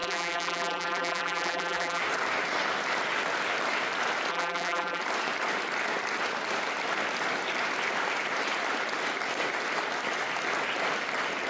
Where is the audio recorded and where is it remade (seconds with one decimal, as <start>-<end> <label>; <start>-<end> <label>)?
0.0-2.0 remade; 2.0-4.3 recorded; 4.3-5.0 remade; 5.0-11.5 recorded